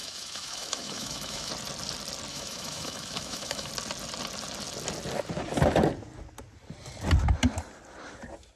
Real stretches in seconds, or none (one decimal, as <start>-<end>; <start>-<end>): 1.5-2.3; 3.7-8.6